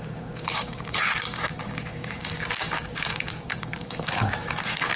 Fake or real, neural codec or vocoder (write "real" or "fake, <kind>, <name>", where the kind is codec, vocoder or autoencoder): fake, codec, DAC